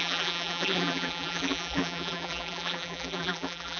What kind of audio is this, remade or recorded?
remade